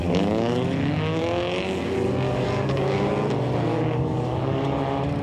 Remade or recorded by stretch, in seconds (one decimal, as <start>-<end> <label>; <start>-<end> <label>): 0.0-3.1 remade; 3.1-3.7 recorded; 3.7-4.8 remade; 4.8-5.2 recorded